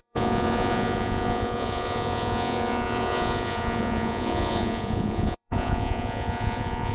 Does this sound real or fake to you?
fake